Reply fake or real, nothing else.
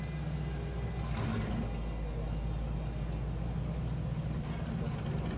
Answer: real